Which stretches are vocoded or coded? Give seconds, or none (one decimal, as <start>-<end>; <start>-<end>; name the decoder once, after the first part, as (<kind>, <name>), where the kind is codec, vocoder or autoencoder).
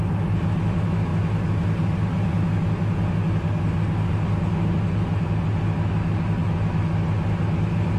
none